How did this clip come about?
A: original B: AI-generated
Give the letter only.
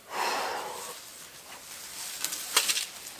A